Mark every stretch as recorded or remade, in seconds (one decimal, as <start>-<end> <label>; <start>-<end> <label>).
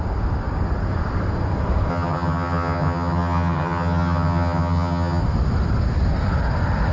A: 0.0-1.9 recorded; 1.9-5.2 remade; 5.2-6.9 recorded